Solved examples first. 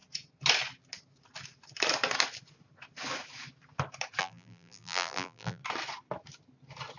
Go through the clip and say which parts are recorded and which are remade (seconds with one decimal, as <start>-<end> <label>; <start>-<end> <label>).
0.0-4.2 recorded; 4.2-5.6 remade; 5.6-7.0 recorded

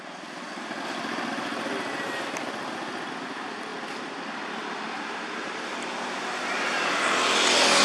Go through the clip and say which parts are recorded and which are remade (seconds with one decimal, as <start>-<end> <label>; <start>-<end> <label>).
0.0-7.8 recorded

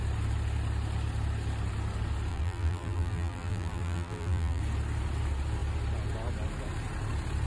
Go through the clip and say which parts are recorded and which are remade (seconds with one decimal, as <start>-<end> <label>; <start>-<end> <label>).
0.0-2.3 recorded; 2.3-4.6 remade; 4.6-7.5 recorded